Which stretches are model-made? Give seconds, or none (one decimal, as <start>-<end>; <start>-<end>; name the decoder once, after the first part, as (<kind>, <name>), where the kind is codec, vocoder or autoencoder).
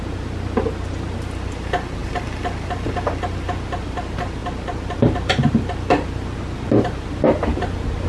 0.0-2.0 (vocoder, BigVGAN v2); 2.7-8.1